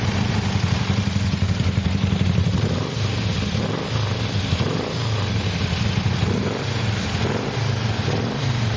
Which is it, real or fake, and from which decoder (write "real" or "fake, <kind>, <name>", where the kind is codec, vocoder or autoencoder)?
real